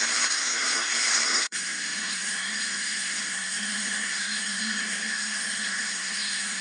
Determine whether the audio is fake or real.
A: fake